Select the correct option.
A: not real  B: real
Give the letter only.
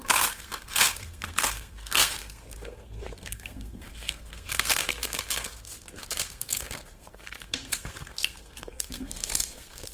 A